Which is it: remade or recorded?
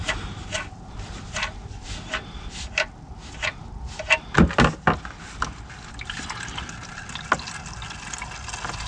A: recorded